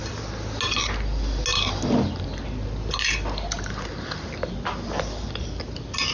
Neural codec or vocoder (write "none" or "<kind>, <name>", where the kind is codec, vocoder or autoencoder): none